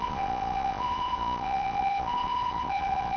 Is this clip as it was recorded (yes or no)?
no